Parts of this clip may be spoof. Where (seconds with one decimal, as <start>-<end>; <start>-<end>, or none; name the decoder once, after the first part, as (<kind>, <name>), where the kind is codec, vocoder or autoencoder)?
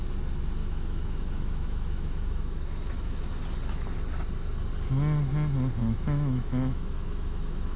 0.6-3.2 (autoencoder, DAC-VAE); 5.8-7.8